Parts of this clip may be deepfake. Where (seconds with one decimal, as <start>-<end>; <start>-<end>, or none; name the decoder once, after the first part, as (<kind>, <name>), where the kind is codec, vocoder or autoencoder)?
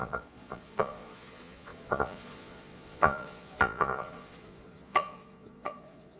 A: 0.0-6.2 (vocoder, Vocos)